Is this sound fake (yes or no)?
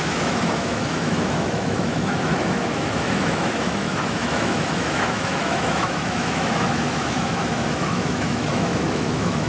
yes